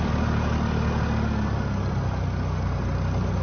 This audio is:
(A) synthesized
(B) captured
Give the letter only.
B